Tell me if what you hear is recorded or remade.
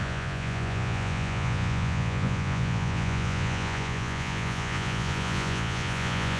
remade